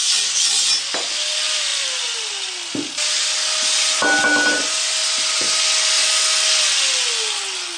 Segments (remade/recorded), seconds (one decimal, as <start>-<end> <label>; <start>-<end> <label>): 0.0-1.7 recorded; 1.7-2.3 remade; 2.3-7.8 recorded